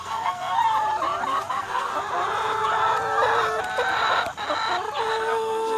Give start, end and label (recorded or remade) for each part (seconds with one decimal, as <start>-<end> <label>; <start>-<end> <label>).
0.0-0.6 remade; 0.6-1.5 recorded; 1.5-1.9 remade; 1.9-5.1 recorded; 5.1-5.8 remade